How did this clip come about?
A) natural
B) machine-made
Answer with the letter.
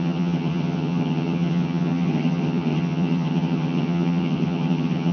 B